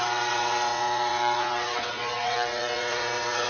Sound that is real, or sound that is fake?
fake